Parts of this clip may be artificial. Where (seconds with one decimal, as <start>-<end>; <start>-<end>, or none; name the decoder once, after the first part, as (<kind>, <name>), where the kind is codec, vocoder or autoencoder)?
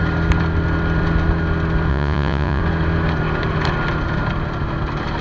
1.9-2.6 (vocoder, Vocos)